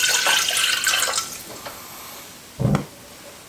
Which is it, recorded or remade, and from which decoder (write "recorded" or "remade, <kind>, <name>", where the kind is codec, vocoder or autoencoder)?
recorded